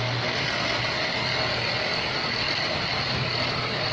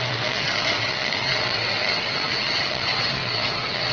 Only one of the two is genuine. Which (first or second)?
first